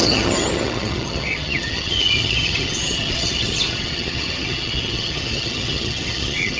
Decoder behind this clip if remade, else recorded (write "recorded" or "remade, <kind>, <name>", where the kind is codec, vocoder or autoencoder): remade, vocoder, HiFi-GAN